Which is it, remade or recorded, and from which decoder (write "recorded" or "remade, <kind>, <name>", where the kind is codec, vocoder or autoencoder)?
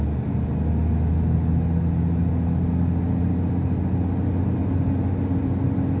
recorded